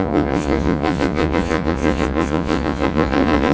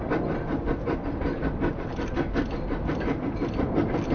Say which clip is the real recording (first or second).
second